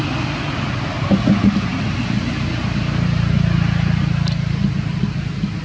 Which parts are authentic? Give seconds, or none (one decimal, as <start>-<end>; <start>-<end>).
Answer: 0.0-5.6

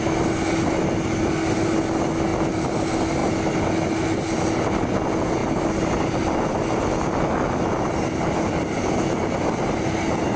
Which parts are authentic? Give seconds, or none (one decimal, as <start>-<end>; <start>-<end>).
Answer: 0.0-10.4